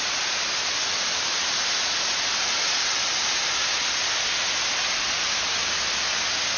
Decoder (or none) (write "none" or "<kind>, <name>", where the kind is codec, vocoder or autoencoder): none